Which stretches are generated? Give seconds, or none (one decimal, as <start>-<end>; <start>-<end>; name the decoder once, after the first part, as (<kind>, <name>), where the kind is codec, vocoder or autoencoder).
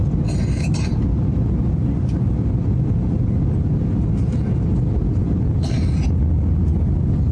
2.2-2.8 (vocoder, BigVGAN v2)